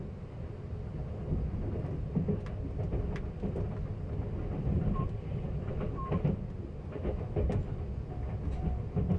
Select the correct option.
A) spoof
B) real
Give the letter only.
B